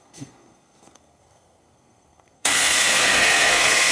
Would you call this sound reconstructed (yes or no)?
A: yes